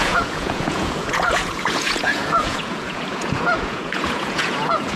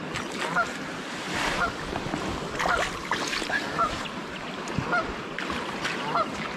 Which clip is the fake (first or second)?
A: first